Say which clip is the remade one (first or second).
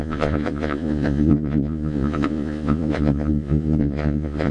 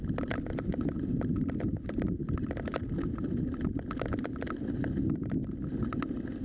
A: first